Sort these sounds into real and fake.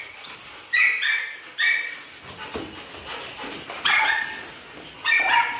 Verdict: real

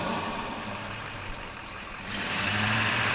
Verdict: fake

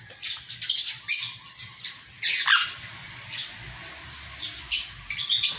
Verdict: real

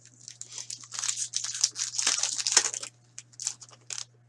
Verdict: real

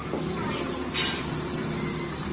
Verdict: real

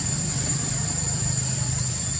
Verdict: fake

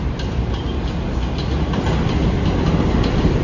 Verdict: real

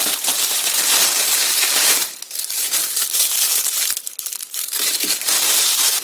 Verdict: fake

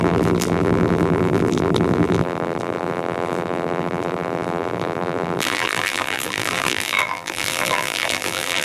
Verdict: fake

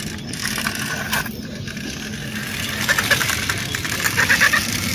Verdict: real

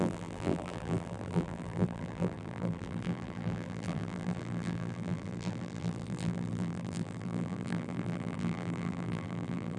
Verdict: fake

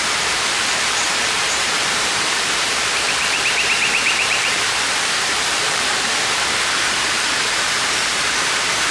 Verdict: fake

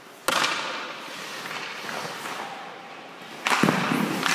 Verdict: real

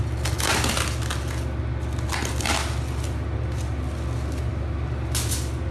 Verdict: real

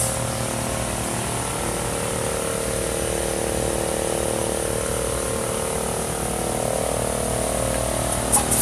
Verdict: real